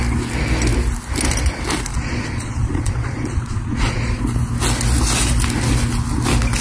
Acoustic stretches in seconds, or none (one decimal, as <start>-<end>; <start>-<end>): 0.0-1.9; 4.2-6.6